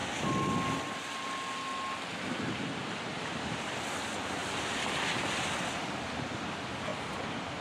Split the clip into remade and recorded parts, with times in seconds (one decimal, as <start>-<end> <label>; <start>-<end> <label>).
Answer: 0.0-2.6 recorded; 2.6-4.4 remade; 4.4-6.1 recorded; 6.1-7.6 remade